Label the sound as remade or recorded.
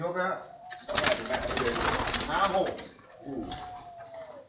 recorded